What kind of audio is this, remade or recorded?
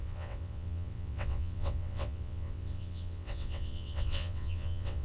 remade